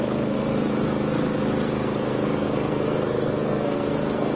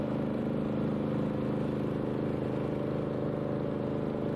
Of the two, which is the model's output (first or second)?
first